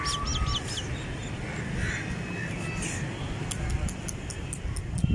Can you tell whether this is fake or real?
real